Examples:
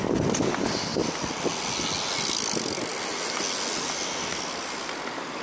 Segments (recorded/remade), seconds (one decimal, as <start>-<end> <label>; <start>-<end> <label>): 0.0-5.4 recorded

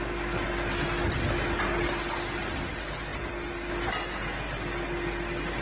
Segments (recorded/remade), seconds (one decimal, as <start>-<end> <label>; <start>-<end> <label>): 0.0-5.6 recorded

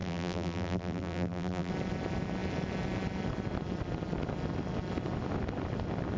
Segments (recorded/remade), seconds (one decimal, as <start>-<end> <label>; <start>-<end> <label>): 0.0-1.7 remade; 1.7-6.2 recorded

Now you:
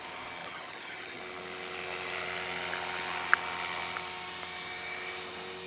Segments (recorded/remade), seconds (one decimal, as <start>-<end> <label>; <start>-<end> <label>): 0.0-0.4 recorded; 0.4-1.2 remade; 1.2-5.7 recorded

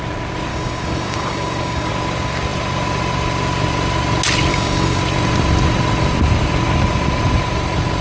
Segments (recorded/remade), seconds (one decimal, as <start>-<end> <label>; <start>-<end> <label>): 0.0-0.5 recorded; 0.5-1.9 remade; 1.9-4.5 recorded; 4.5-5.0 remade; 5.0-8.0 recorded

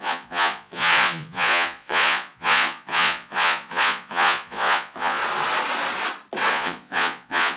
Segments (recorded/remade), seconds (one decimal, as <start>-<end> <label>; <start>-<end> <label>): 0.0-5.2 remade; 5.2-6.5 recorded; 6.5-7.6 remade